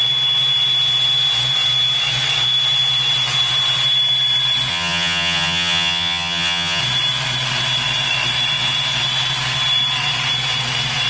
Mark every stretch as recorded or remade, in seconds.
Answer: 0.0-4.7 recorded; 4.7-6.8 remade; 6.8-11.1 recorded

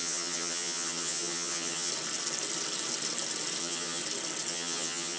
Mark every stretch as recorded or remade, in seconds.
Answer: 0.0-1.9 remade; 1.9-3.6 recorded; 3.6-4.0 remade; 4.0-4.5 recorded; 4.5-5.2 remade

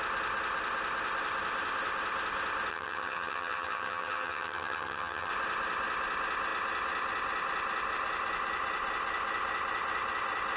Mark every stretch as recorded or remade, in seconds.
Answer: 0.0-2.7 recorded; 2.7-5.3 remade; 5.3-10.6 recorded

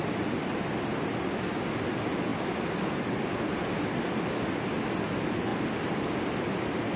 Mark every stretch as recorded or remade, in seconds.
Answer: 0.0-7.0 recorded

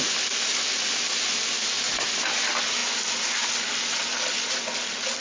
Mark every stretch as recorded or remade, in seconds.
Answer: 0.0-5.2 recorded

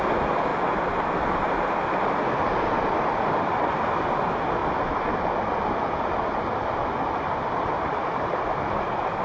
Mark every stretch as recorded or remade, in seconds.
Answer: 0.0-9.2 recorded

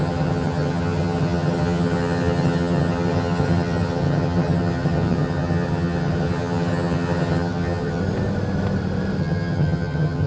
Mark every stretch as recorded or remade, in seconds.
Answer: 0.0-8.0 remade; 8.0-9.2 recorded; 9.2-10.3 remade

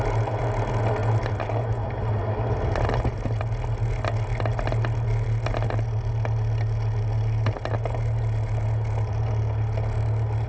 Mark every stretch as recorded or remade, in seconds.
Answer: 0.0-10.5 recorded